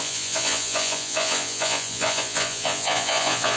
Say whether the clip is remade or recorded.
remade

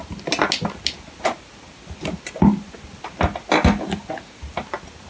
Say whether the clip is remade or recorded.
recorded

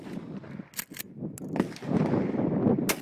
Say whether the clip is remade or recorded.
recorded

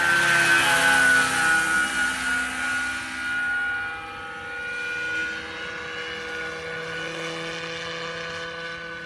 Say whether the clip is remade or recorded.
recorded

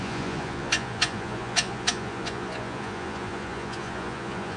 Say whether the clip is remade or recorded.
remade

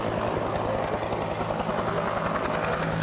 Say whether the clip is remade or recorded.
recorded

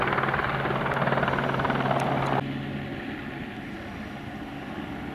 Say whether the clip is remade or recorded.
recorded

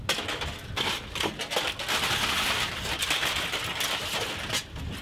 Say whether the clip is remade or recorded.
recorded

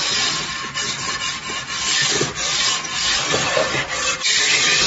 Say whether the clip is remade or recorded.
recorded